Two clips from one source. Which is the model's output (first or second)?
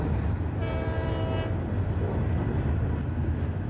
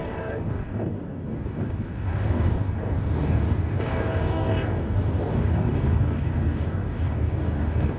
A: second